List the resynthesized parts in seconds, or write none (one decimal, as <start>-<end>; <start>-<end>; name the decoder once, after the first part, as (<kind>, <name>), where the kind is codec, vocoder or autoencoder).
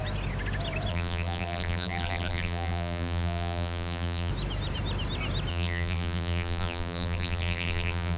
0.9-4.3 (vocoder, BigVGAN v2); 5.5-8.2